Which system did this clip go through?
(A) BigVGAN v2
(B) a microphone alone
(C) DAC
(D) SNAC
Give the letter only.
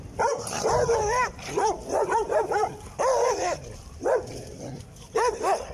A